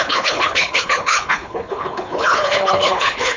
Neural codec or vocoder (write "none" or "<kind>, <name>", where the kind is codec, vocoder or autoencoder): codec, HILCodec